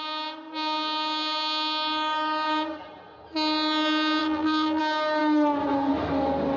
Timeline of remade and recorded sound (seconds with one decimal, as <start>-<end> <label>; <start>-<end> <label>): 0.0-4.2 recorded; 4.2-4.8 remade; 4.8-6.6 recorded